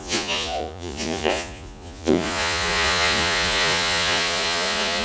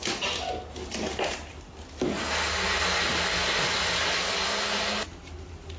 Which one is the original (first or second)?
second